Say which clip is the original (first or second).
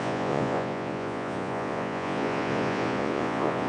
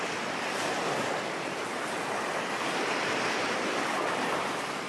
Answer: second